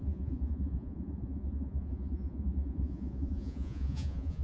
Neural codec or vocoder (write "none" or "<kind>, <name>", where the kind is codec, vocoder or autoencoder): vocoder, Vocos